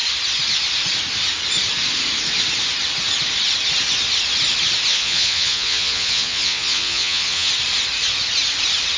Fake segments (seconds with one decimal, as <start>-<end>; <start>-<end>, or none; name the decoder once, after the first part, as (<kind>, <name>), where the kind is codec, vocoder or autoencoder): 4.9-7.5 (vocoder, Vocos)